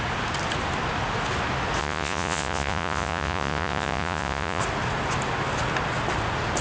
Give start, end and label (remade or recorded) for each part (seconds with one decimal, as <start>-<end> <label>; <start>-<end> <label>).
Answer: 0.0-1.8 recorded; 1.8-4.6 remade; 4.6-6.6 recorded